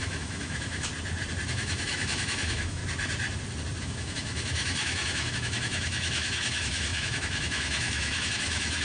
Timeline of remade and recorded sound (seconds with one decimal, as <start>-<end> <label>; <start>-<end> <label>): 0.0-0.9 remade; 0.9-1.5 recorded; 1.5-2.8 remade; 2.8-3.8 recorded; 3.8-8.8 remade